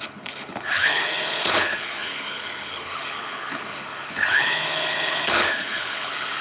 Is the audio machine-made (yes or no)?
yes